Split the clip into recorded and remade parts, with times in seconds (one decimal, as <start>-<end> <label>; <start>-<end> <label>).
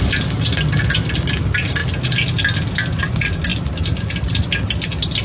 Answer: 0.0-5.2 recorded